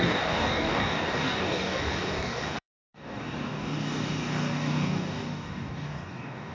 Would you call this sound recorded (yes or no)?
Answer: no